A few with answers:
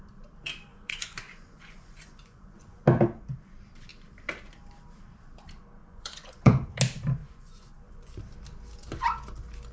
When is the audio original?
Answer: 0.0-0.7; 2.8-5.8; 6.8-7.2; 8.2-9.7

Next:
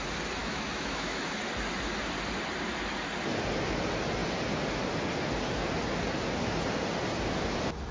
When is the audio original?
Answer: 0.0-0.4; 1.4-7.9

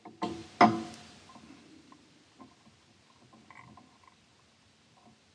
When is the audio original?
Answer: 0.0-5.3

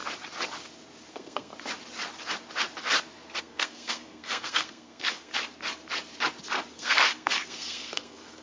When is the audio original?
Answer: 0.0-1.1; 1.5-3.4; 5.3-6.7

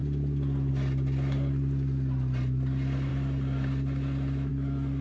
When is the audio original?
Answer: 0.0-5.0

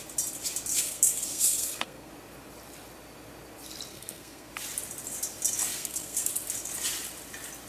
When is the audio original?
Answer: 0.0-0.7; 2.1-3.9; 4.5-5.7; 6.3-7.7

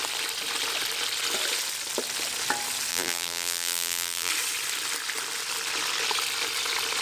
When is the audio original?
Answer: 0.0-2.9; 4.3-7.0

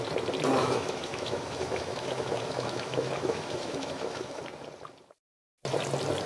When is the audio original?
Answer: 0.0-0.6; 4.4-6.3